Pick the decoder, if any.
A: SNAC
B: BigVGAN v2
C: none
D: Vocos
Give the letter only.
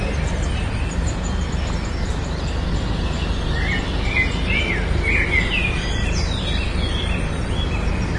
C